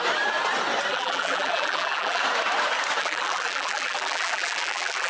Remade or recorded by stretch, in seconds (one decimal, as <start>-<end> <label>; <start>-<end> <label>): 0.0-0.9 recorded; 0.9-2.2 remade; 2.2-3.0 recorded; 3.0-5.1 remade